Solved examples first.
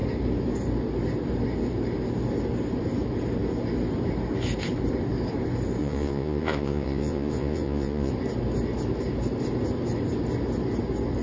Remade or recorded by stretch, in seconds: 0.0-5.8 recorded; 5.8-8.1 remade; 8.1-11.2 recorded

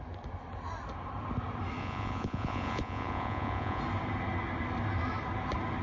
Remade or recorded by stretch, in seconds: 0.0-1.8 recorded; 1.8-3.8 remade; 3.8-5.8 recorded

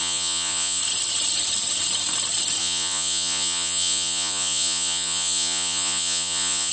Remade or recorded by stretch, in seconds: 0.0-0.8 remade; 0.8-2.6 recorded; 2.6-6.7 remade

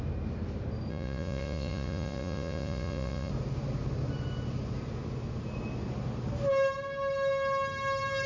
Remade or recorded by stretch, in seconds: 0.0-0.9 recorded; 0.9-3.3 remade; 3.3-8.3 recorded

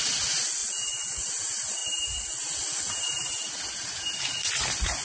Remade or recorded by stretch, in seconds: 0.0-0.6 recorded; 0.6-1.3 remade; 1.3-5.0 recorded